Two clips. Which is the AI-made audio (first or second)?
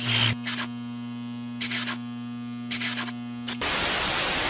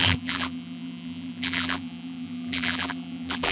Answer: second